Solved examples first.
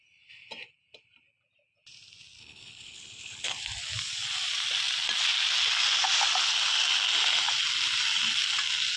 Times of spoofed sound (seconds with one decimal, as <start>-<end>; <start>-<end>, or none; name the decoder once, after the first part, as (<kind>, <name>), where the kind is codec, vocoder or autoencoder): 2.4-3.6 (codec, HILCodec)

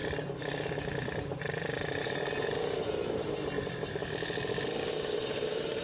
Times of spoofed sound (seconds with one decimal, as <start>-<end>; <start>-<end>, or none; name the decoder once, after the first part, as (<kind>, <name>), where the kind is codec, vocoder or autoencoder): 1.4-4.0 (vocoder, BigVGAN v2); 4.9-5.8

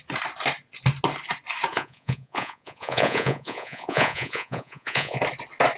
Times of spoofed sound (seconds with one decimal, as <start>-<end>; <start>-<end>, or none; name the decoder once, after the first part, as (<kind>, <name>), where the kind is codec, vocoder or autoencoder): 1.7-5.2 (vocoder, Vocos)

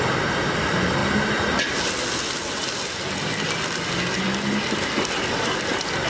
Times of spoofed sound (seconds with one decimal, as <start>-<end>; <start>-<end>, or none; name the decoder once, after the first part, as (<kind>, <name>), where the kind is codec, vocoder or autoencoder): none

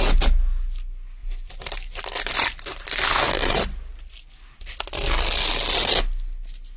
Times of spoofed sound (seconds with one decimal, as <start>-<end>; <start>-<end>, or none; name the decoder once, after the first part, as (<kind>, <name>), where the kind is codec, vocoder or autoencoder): none

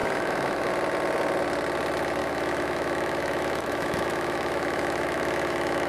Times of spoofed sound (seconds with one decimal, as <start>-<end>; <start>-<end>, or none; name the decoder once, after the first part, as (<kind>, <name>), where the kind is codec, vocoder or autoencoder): 0.0-0.7 (autoencoder, DAC-VAE); 2.2-5.9

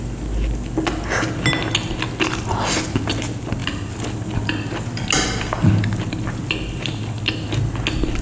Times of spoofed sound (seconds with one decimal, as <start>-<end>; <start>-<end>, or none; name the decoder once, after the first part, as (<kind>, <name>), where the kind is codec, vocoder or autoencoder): none